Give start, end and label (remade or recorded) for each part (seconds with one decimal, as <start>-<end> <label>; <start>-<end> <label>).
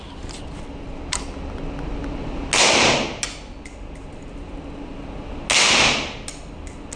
0.0-7.0 recorded